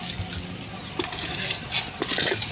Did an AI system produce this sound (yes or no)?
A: no